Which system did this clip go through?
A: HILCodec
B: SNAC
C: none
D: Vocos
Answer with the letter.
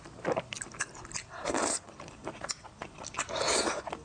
C